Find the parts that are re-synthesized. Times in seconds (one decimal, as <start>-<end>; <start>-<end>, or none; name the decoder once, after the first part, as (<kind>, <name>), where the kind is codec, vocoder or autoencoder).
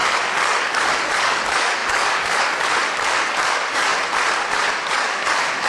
0.0-3.9 (codec, DAC); 4.9-5.7